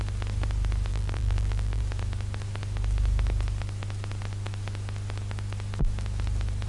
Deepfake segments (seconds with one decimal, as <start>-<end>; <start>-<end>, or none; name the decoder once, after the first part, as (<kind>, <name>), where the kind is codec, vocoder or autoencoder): 0.9-1.8 (vocoder, BigVGAN v2)